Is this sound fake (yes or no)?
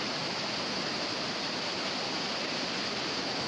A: no